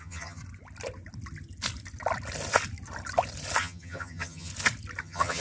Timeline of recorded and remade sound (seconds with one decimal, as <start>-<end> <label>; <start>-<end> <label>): 0.0-0.4 remade; 0.4-3.6 recorded; 3.6-4.5 remade; 4.5-5.0 recorded; 5.0-5.4 remade